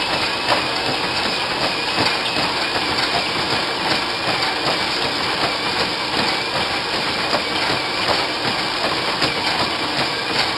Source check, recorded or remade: recorded